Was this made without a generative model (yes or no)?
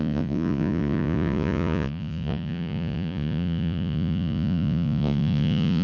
no